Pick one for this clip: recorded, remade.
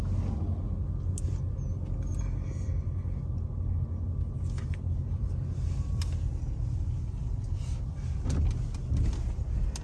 recorded